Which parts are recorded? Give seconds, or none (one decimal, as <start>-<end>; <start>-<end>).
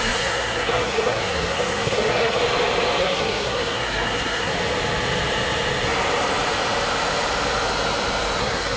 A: 2.4-3.0; 4.5-8.4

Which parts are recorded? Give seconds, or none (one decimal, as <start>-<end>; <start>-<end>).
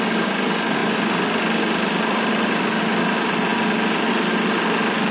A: 0.0-5.1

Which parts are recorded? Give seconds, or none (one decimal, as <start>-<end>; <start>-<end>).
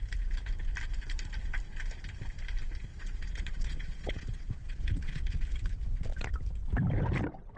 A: 0.0-2.9; 5.4-7.6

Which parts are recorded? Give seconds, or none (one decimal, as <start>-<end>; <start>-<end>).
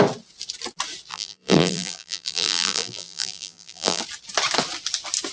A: 0.0-1.1; 4.0-5.3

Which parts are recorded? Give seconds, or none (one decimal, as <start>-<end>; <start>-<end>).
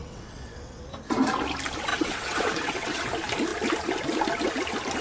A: 0.8-1.9; 3.1-5.0